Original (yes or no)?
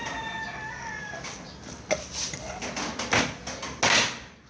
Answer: yes